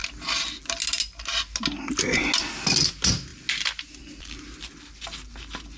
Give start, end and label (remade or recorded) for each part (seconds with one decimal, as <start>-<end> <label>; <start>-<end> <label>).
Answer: 0.0-5.8 recorded